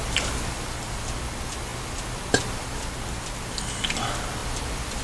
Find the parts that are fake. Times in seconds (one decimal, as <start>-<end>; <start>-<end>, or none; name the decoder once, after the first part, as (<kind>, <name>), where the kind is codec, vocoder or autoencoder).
none